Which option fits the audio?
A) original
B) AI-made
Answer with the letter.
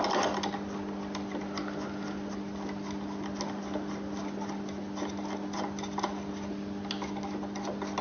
A